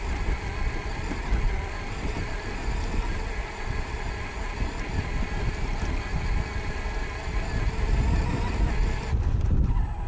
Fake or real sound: real